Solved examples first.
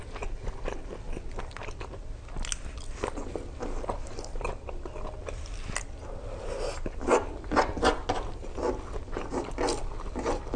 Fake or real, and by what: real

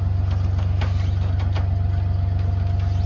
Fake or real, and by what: real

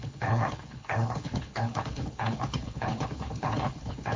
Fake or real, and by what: fake, codec, HILCodec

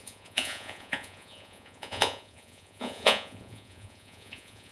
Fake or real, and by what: fake, vocoder, Vocos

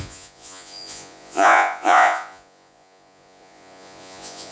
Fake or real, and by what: fake, vocoder, Vocos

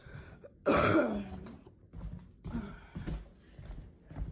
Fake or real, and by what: real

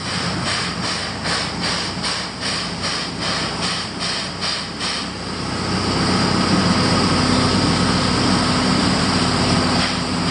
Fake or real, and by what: real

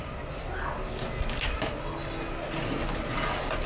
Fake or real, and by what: real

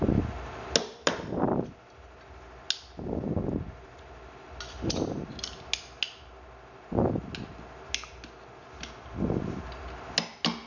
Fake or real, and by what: real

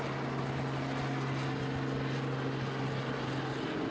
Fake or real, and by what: real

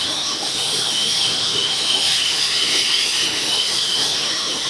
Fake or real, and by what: fake, autoencoder, DAC-VAE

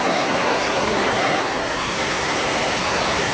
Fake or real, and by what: fake, codec, SNAC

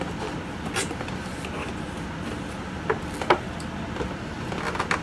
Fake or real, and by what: real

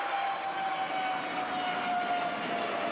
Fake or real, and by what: real